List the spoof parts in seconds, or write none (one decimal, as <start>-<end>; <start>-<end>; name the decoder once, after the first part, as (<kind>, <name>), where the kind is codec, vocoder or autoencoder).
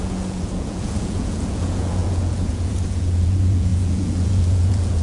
0.0-5.0 (vocoder, Vocos)